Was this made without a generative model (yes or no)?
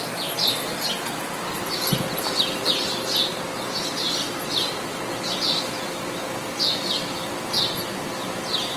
yes